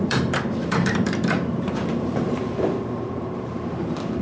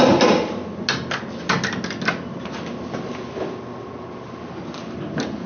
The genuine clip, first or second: second